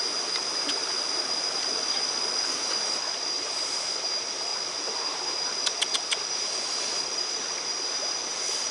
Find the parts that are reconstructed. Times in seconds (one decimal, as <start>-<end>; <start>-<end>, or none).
none